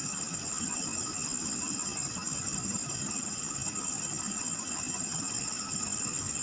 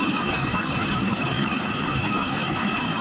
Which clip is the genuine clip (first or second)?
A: first